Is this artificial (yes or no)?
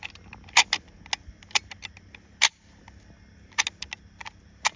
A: no